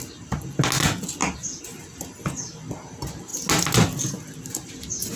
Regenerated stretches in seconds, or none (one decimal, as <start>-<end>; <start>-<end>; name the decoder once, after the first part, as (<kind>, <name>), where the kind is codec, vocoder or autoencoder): none